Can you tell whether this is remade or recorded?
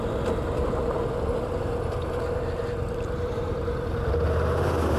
recorded